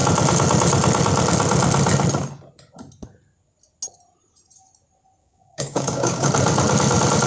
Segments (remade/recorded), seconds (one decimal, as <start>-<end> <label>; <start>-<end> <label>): 0.0-5.2 recorded; 5.2-6.3 remade; 6.3-7.3 recorded